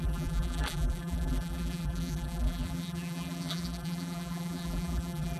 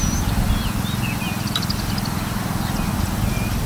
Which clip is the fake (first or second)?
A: first